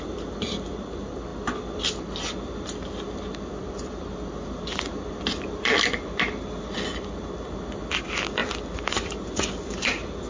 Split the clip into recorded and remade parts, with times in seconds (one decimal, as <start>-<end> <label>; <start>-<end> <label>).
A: 0.0-10.3 recorded